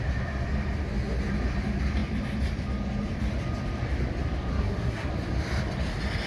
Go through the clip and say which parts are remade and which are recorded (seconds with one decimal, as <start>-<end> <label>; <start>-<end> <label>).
0.0-4.5 recorded; 4.5-5.1 remade; 5.1-6.3 recorded